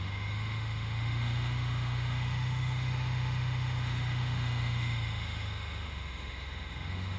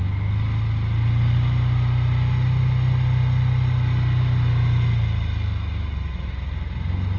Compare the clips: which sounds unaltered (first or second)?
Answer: second